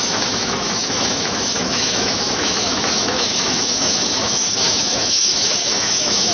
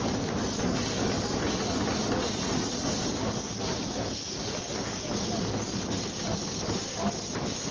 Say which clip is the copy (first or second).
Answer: first